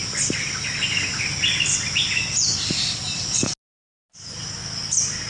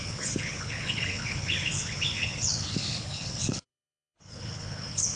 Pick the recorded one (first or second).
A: first